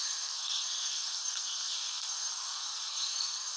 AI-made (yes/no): yes